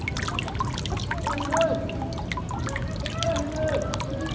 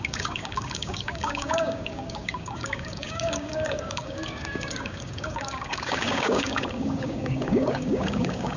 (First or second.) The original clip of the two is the first